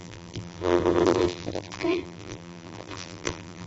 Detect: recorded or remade remade